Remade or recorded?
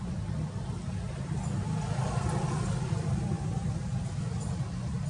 recorded